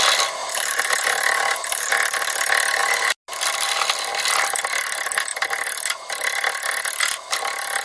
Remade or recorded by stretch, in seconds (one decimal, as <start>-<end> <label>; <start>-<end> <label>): 0.0-0.4 recorded; 0.4-1.9 remade; 1.9-7.8 recorded